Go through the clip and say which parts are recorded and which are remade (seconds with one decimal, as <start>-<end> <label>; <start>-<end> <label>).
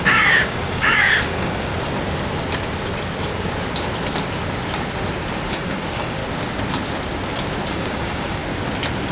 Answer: 0.0-1.7 remade; 1.7-5.5 recorded; 5.5-6.2 remade; 6.2-7.7 recorded; 7.7-8.4 remade; 8.4-9.1 recorded